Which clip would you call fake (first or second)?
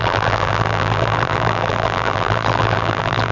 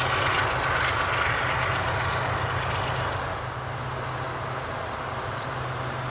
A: first